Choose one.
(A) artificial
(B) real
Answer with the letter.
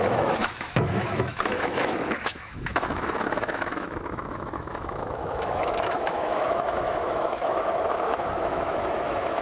A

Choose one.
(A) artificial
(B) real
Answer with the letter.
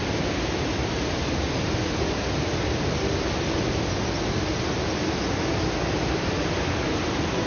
B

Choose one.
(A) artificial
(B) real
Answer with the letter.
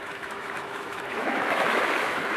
A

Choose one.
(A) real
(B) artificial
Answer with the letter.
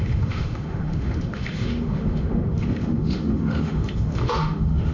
B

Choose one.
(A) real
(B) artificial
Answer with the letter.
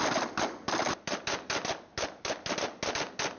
A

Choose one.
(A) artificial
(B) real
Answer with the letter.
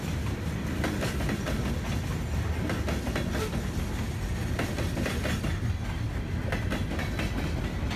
B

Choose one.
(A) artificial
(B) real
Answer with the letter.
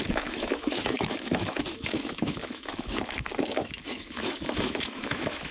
A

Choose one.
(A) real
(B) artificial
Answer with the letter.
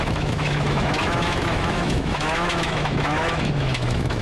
B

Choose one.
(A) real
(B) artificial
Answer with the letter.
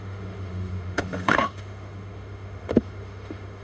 B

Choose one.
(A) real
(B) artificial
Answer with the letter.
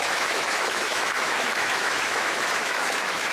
B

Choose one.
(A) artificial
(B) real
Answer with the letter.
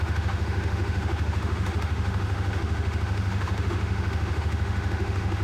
A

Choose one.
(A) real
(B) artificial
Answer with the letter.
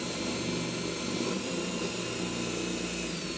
A